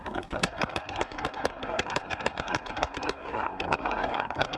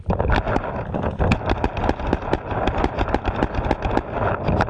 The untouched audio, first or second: second